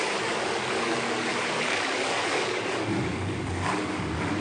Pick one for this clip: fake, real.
fake